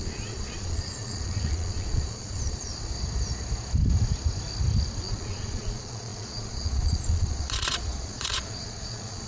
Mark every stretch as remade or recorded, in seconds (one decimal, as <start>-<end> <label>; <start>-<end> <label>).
0.0-2.7 remade; 2.7-5.0 recorded; 5.0-9.3 remade

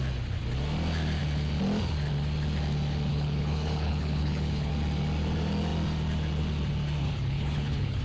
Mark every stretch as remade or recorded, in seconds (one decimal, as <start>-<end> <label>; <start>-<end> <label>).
0.0-3.1 recorded; 3.1-4.7 remade; 4.7-7.0 recorded; 7.0-8.0 remade

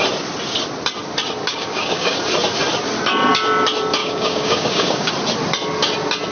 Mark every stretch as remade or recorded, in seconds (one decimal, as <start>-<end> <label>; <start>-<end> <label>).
0.0-1.5 recorded; 1.5-2.2 remade; 2.2-4.0 recorded; 4.0-5.1 remade; 5.1-6.3 recorded

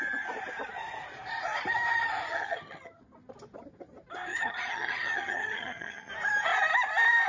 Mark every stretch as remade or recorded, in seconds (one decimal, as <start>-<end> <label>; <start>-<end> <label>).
0.0-2.3 recorded; 2.3-3.0 remade; 3.0-4.3 recorded; 4.3-6.1 remade; 6.1-7.3 recorded

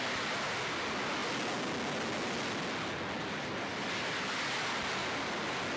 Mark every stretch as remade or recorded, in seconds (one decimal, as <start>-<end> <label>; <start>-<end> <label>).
0.0-5.8 recorded

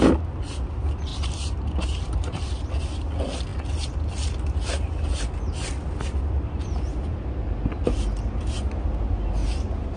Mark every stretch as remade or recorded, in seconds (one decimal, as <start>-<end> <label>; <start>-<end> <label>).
0.0-1.1 recorded; 1.1-2.7 remade; 2.7-9.4 recorded; 9.4-10.0 remade

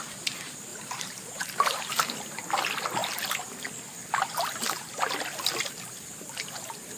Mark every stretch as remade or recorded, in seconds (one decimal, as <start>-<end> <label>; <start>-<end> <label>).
0.0-0.7 recorded; 0.7-1.8 remade; 1.8-7.0 recorded